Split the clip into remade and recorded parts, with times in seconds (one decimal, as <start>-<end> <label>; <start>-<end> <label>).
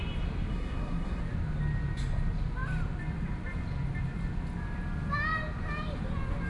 0.0-0.5 recorded; 0.5-1.2 remade; 1.2-6.5 recorded